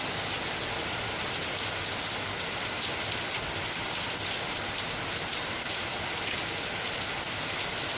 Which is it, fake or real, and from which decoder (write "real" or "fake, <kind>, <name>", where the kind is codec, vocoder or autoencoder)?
real